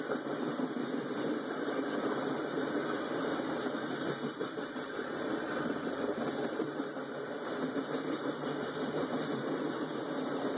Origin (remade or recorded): remade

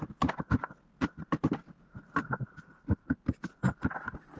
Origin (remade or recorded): recorded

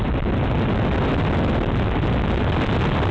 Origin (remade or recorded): recorded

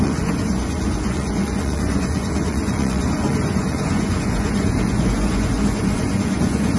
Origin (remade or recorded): remade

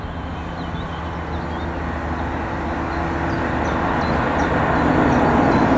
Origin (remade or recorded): recorded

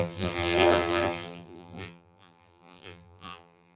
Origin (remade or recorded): remade